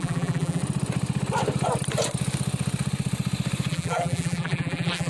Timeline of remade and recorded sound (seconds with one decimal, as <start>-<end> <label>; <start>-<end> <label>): 0.0-0.6 remade; 0.6-3.7 recorded; 3.7-5.1 remade